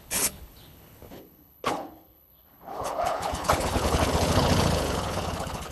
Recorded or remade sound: remade